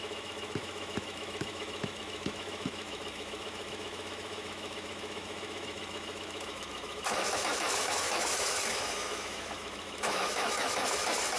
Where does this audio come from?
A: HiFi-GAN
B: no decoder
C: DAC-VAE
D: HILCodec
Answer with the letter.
C